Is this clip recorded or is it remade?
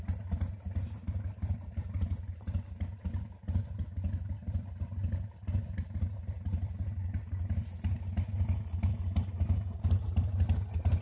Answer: recorded